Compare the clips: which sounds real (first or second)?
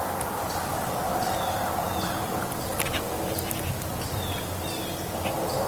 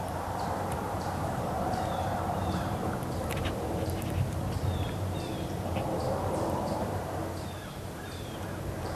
first